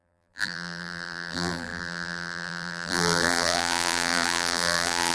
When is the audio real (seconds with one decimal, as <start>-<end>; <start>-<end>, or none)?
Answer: none

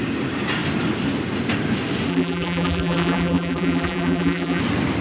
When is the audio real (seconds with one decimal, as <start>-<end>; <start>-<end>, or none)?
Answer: 0.0-2.1; 4.6-5.0

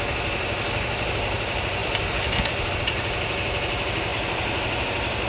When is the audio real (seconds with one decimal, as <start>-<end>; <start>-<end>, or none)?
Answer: 0.0-1.8; 2.7-4.1

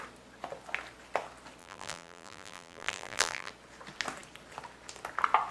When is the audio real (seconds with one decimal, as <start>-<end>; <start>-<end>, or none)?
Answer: 0.0-1.6; 3.5-5.5